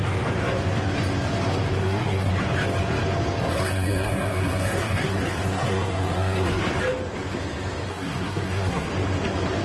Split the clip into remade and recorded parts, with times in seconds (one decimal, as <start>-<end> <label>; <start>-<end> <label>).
0.0-1.8 recorded; 1.8-2.3 remade; 2.3-3.4 recorded; 3.4-6.6 remade; 6.6-7.9 recorded; 7.9-8.9 remade; 8.9-9.6 recorded